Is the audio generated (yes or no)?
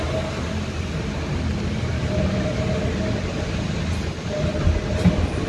no